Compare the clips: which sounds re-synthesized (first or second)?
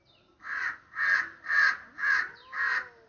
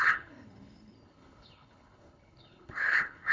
second